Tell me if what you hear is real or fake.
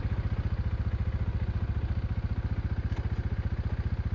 real